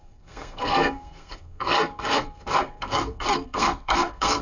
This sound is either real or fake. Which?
fake